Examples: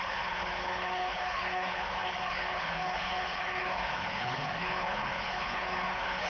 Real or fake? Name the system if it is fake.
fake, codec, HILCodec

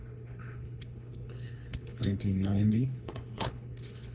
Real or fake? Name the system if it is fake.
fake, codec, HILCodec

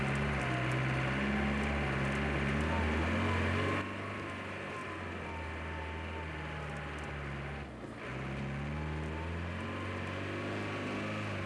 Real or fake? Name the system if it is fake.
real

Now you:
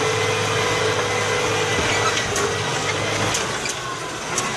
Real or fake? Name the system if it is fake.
real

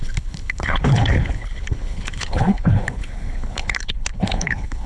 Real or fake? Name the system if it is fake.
fake, codec, HILCodec